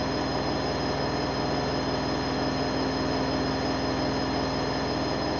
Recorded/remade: recorded